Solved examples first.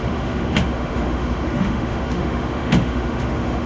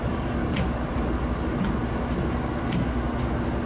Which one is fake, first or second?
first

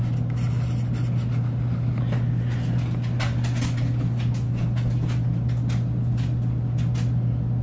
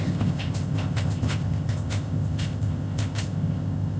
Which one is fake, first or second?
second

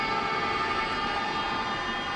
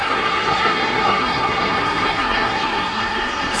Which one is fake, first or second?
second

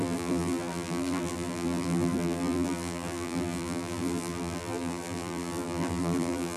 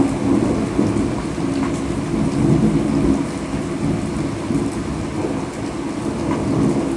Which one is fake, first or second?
first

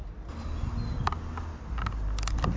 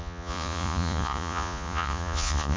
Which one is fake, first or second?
second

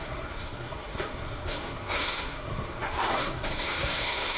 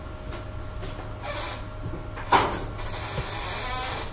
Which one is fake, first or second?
first